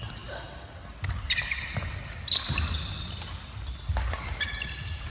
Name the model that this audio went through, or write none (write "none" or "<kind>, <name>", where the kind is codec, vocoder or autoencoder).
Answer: none